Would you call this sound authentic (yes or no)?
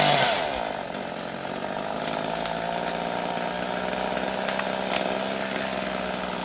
yes